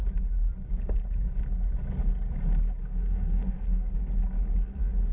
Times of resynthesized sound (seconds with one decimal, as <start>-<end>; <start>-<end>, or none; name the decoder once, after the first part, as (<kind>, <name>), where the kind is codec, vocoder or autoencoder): 2.8-4.0 (codec, SNAC)